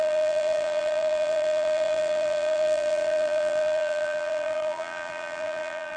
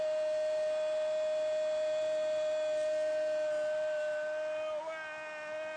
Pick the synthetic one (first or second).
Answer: first